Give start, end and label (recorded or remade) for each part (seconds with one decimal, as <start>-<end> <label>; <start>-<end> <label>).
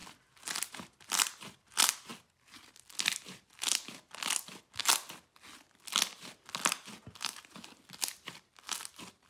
0.0-9.3 recorded